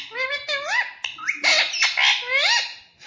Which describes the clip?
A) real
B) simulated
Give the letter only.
A